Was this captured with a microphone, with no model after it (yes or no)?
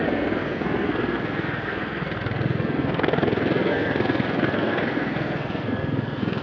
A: no